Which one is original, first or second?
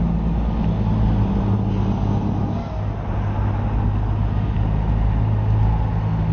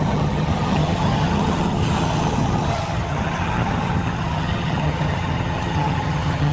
first